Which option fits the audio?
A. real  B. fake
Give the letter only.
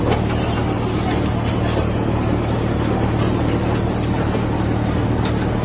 A